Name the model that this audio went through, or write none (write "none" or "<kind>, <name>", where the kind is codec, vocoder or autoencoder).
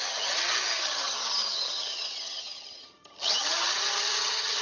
vocoder, HiFi-GAN